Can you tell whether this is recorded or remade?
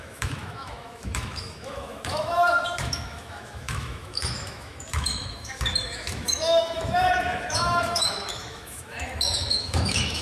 remade